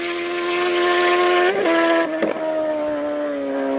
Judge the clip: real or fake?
real